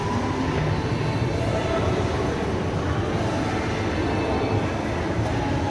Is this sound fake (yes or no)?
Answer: no